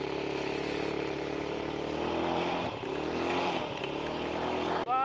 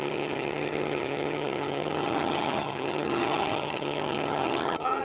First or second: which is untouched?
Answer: first